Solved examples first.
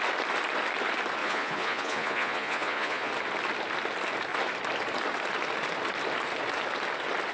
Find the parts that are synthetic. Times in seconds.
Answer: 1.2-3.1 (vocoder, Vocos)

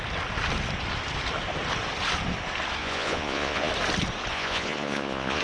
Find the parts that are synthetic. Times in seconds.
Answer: 2.8-3.7 (vocoder, Vocos); 4.3-5.4

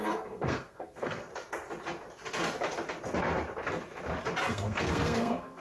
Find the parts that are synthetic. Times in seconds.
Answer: 0.0-1.3 (codec, SNAC); 4.5-5.6